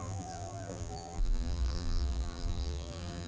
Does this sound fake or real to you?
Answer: fake